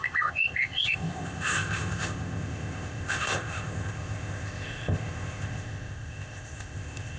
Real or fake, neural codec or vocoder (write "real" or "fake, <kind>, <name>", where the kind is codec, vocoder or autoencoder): fake, codec, ZipCodec